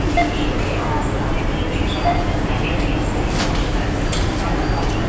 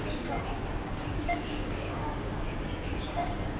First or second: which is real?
first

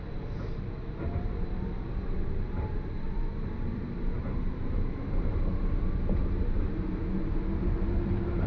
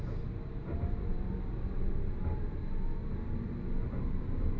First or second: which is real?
second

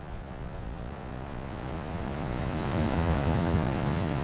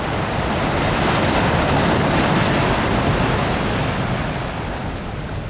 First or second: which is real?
second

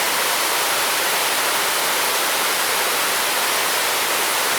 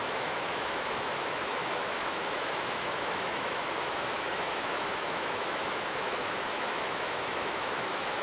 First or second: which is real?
first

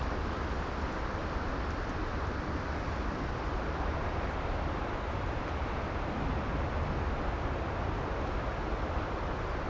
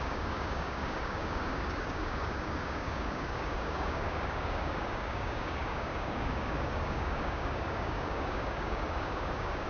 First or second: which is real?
first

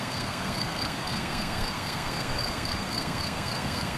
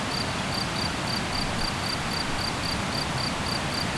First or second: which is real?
second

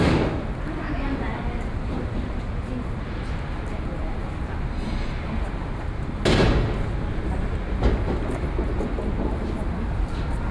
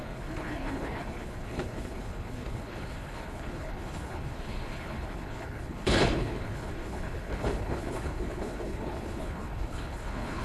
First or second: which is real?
first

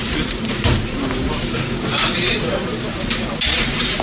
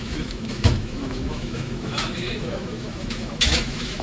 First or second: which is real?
first